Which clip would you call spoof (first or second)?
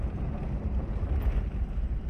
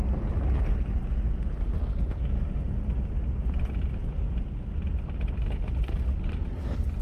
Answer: first